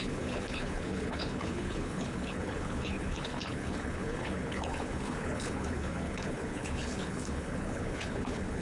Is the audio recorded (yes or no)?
no